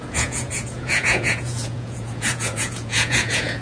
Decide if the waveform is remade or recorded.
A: remade